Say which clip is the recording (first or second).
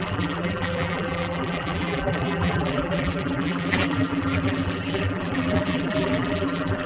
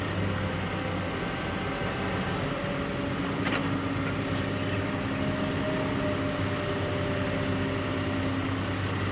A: second